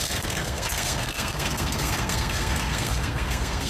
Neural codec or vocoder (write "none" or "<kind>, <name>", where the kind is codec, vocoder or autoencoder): codec, SNAC